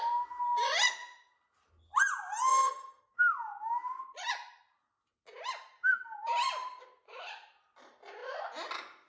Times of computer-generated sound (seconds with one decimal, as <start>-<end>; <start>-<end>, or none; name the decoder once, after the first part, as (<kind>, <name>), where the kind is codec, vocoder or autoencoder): 2.5-3.0 (vocoder, BigVGAN v2); 3.8-4.6; 6.6-7.2